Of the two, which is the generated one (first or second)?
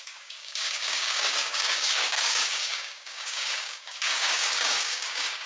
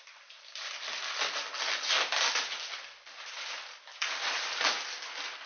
first